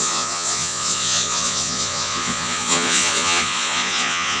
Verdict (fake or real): fake